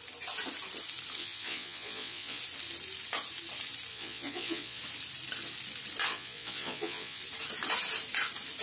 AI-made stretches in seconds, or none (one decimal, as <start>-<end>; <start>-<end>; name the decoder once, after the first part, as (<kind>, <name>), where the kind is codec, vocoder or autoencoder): 1.2-2.4 (vocoder, Vocos); 3.9-4.8; 6.1-7.2